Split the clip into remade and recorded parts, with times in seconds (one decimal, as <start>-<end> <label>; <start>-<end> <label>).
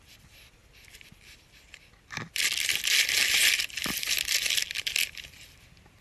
0.0-6.0 recorded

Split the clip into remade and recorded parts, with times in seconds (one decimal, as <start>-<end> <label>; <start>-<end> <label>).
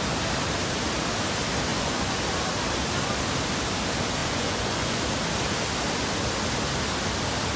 0.0-1.7 recorded; 1.7-2.2 remade; 2.2-4.2 recorded; 4.2-5.0 remade; 5.0-7.6 recorded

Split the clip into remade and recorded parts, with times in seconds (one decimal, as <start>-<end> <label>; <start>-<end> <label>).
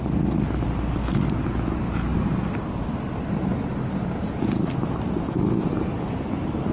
0.0-6.7 recorded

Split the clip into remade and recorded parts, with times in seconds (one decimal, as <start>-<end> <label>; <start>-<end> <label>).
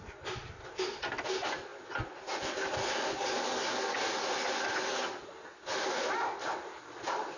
0.0-7.4 recorded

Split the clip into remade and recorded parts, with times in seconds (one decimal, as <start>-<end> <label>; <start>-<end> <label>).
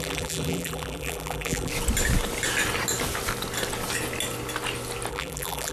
0.0-1.7 remade; 1.7-5.1 recorded; 5.1-5.7 remade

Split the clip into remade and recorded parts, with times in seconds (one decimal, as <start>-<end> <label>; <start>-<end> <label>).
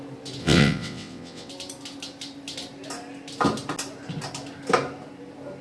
0.0-0.4 recorded; 0.4-1.5 remade; 1.5-5.6 recorded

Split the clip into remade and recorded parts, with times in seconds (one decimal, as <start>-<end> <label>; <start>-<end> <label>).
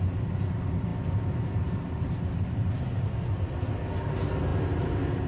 0.0-5.3 recorded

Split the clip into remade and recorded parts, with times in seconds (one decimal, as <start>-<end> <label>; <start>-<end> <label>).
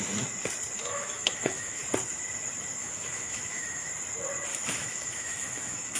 0.0-0.8 recorded; 0.8-1.8 remade; 1.8-2.8 recorded; 2.8-3.9 remade; 3.9-4.5 recorded; 4.5-6.0 remade